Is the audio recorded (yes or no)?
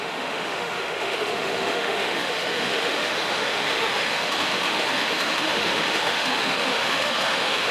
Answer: no